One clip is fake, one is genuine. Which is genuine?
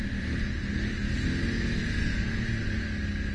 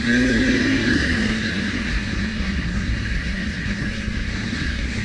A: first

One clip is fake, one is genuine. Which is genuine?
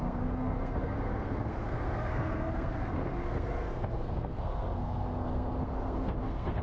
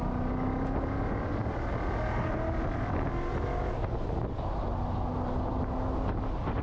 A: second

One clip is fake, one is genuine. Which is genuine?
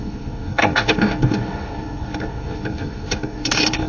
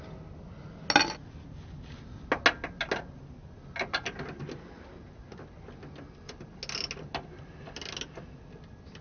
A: second